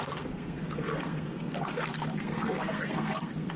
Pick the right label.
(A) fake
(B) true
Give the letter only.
A